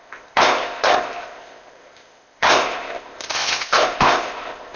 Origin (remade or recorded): remade